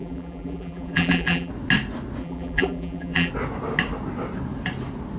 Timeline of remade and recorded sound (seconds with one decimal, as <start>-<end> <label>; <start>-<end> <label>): 0.0-1.5 remade; 1.5-2.2 recorded; 2.2-3.3 remade; 3.3-5.2 recorded

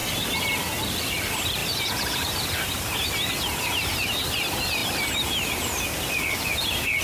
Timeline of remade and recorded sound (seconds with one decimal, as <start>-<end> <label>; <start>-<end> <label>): 0.0-0.9 recorded; 0.9-4.8 remade; 4.8-6.1 recorded; 6.1-7.0 remade

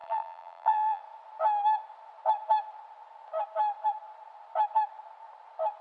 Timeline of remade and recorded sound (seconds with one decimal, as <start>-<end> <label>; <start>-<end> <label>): 0.0-1.0 remade; 1.0-5.8 recorded

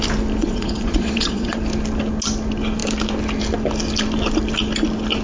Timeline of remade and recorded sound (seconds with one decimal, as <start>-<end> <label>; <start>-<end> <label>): 0.0-0.4 recorded; 0.4-1.6 remade; 1.6-5.2 recorded

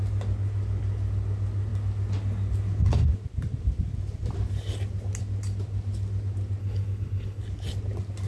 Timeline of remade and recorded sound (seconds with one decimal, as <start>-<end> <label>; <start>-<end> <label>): 0.0-6.6 recorded; 6.6-7.4 remade; 7.4-8.3 recorded

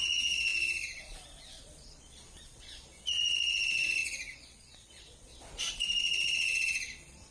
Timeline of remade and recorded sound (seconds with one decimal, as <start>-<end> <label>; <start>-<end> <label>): 0.0-7.3 remade